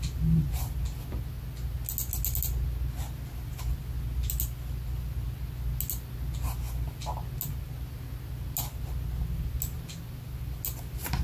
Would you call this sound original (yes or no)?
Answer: yes